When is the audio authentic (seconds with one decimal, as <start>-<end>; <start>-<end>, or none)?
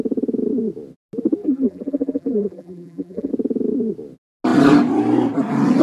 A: 0.0-1.4; 3.3-5.8